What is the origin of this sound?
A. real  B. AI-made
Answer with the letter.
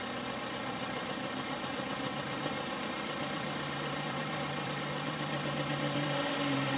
B